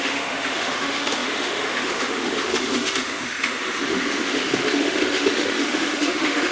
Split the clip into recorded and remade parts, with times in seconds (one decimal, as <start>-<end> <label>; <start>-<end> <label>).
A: 0.0-6.5 remade